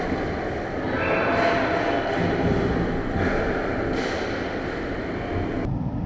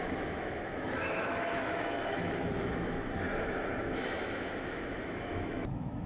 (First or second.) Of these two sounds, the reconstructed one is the second